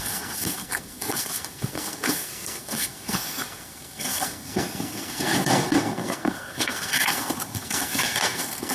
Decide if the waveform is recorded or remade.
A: remade